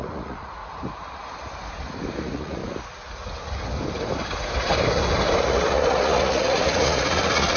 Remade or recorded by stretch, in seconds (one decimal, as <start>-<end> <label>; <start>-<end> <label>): 0.0-0.6 remade; 0.6-2.2 recorded; 2.2-2.6 remade; 2.6-5.4 recorded; 5.4-7.6 remade